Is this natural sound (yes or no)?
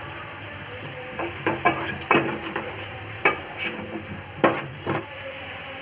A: no